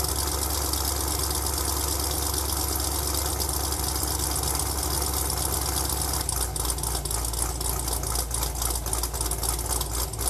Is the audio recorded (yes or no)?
yes